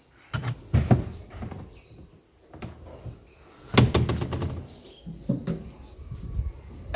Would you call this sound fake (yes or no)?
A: no